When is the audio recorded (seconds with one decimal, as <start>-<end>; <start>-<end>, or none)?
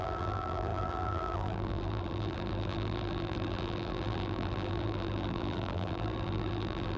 none